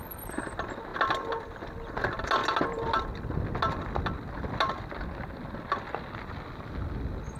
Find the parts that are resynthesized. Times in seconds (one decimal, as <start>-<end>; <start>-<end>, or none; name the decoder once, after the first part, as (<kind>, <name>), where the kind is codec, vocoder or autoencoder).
none